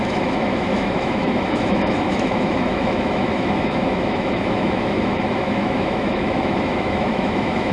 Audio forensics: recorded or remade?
remade